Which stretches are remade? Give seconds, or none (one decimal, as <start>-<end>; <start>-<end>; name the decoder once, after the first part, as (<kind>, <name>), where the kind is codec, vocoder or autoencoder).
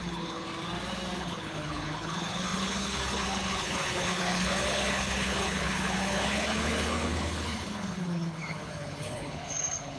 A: 0.0-0.5 (codec, HILCodec); 1.2-10.0